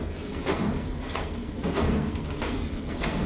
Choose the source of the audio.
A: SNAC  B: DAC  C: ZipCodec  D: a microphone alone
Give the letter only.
A